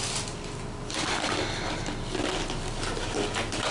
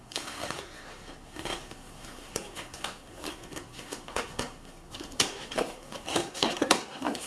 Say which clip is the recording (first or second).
first